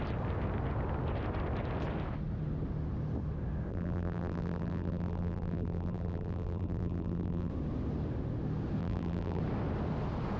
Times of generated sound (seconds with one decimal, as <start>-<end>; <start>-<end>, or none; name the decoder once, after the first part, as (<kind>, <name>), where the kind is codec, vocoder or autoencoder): 3.7-7.5 (vocoder, BigVGAN v2); 8.8-9.4